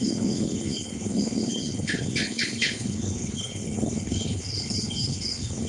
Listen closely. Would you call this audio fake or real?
fake